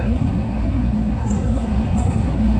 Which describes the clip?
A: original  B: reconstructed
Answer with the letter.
B